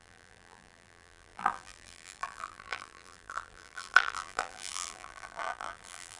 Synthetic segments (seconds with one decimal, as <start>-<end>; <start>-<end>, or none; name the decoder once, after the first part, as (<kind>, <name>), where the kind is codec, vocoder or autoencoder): 0.0-6.2 (vocoder, BigVGAN v2)